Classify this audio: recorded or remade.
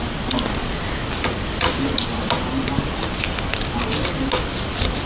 recorded